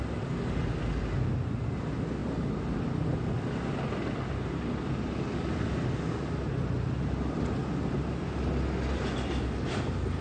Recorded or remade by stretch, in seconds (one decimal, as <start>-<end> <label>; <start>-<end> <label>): 0.0-10.2 recorded